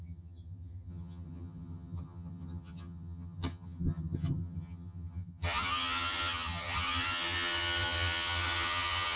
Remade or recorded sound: remade